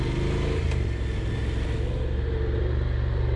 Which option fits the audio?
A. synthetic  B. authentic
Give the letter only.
B